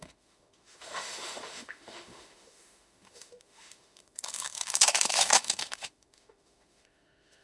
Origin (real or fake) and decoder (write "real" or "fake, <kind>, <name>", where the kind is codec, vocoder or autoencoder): fake, autoencoder, DAC-VAE